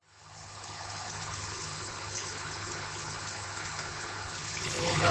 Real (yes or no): no